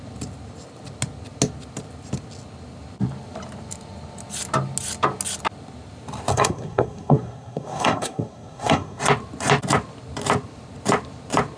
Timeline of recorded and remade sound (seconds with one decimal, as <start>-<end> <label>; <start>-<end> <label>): 0.0-6.3 recorded; 6.3-9.0 remade; 9.0-11.6 recorded